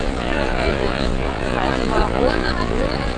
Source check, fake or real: fake